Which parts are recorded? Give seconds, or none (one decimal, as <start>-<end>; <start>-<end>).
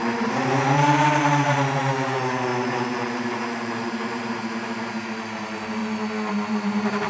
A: 5.8-6.3